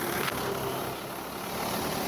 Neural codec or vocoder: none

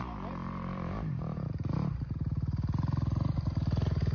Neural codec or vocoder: vocoder, BigVGAN v2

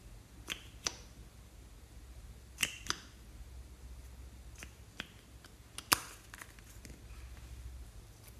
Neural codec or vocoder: none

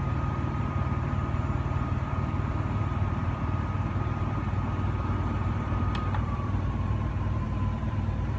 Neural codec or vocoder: vocoder, BigVGAN v2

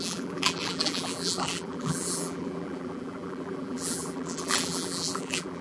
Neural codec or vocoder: vocoder, BigVGAN v2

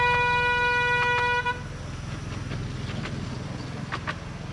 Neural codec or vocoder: none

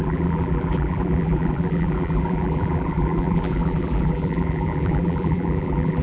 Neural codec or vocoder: vocoder, BigVGAN v2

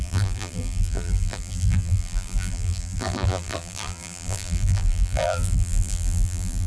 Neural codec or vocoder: vocoder, BigVGAN v2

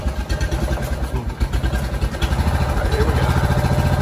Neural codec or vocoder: none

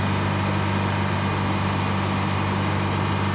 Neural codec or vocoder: none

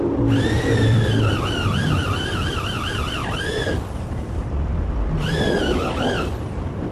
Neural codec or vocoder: none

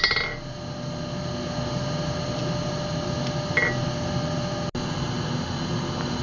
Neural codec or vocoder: none